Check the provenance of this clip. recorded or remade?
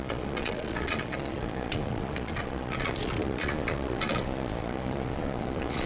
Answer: remade